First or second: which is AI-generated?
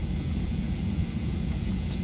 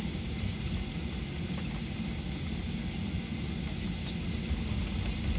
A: first